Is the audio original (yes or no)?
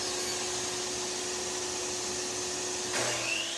yes